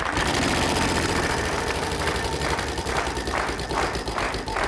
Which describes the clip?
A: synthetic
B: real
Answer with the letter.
B